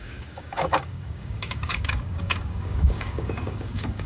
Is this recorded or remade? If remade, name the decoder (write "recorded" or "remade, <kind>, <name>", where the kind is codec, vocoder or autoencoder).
remade, codec, DAC